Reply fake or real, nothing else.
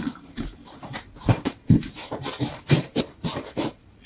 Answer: fake